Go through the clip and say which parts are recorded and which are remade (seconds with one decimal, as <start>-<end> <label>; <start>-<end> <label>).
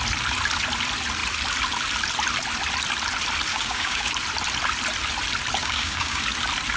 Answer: 0.0-3.5 recorded; 3.5-4.1 remade; 4.1-5.6 recorded; 5.6-6.2 remade; 6.2-6.8 recorded